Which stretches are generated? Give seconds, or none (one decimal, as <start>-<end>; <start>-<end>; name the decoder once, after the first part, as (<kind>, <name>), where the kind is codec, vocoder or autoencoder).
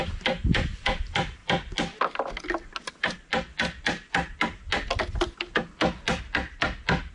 0.0-1.4 (vocoder, BigVGAN v2); 2.9-3.3